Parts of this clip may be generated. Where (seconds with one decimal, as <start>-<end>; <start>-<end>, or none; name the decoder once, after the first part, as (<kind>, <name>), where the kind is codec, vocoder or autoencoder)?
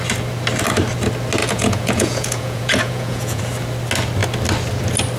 1.4-3.4 (vocoder, Vocos)